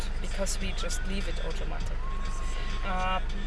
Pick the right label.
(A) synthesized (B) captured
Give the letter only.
B